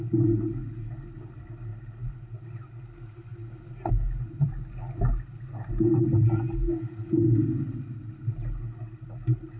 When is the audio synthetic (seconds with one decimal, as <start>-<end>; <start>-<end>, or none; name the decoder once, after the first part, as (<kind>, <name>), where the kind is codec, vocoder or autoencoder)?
none